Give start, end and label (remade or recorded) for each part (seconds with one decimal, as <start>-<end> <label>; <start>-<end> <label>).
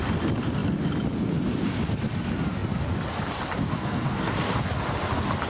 0.0-3.7 recorded; 3.7-4.6 remade; 4.6-5.5 recorded